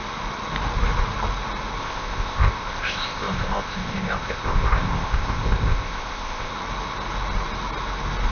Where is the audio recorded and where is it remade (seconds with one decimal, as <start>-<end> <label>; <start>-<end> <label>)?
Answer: 0.0-1.8 recorded; 1.8-6.5 remade; 6.5-8.3 recorded